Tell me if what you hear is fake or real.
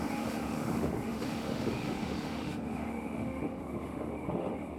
fake